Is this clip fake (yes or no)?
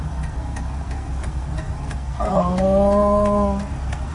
yes